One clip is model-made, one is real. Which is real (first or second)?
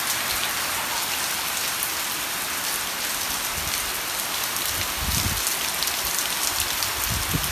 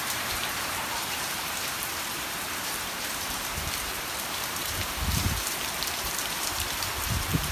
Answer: first